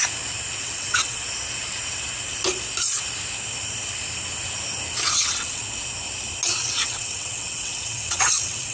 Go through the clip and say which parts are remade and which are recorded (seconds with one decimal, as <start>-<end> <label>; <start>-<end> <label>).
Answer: 0.0-0.6 recorded; 0.6-1.2 remade; 1.2-5.0 recorded; 5.0-5.6 remade; 5.6-6.6 recorded; 6.6-8.7 remade